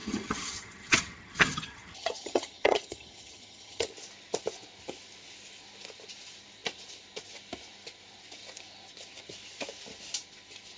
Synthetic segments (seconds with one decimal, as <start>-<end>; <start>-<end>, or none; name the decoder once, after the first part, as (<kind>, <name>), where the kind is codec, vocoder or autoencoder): 0.0-3.9 (vocoder, HiFi-GAN)